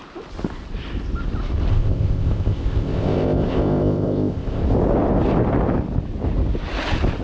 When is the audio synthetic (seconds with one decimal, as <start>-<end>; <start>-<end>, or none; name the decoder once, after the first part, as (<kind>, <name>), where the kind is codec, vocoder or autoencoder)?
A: 1.7-4.6 (codec, ZipCodec)